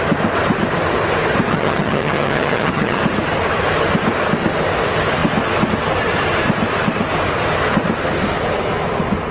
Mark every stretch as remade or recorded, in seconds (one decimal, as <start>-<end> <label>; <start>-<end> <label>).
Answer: 0.0-1.5 recorded; 1.5-3.0 remade; 3.0-9.3 recorded

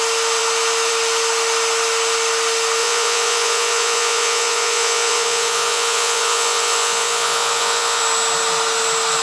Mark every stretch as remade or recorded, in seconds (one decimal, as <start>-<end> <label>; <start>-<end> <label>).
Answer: 0.0-2.8 recorded; 2.8-8.0 remade; 8.0-9.2 recorded

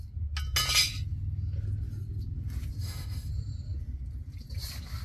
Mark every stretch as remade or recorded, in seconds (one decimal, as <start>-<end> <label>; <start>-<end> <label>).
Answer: 0.0-2.8 recorded; 2.8-3.3 remade; 3.3-5.0 recorded